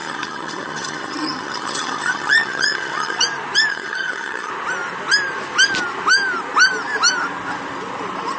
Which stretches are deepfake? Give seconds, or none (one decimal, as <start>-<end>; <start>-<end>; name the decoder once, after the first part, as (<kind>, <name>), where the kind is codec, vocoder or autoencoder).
0.0-3.2 (vocoder, HiFi-GAN); 3.7-4.5